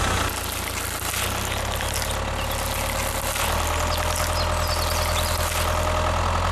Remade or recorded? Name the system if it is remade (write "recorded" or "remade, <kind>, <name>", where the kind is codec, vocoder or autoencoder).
recorded